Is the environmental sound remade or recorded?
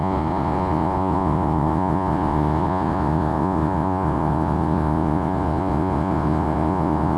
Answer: remade